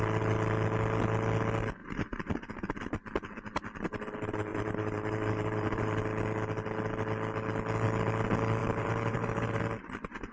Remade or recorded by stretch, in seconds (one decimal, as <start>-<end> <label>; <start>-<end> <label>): 0.0-1.8 recorded; 1.8-2.3 remade; 2.3-4.5 recorded; 4.5-6.0 remade; 6.0-8.6 recorded; 8.6-9.6 remade; 9.6-10.3 recorded